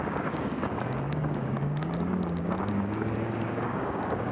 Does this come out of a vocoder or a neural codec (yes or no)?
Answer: yes